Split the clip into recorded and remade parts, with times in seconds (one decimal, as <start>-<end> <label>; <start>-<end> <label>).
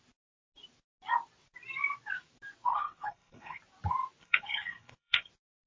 0.0-2.7 recorded; 2.7-3.6 remade; 3.6-4.2 recorded; 4.2-5.3 remade; 5.3-5.7 recorded